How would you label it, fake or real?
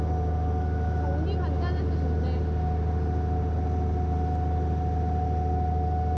real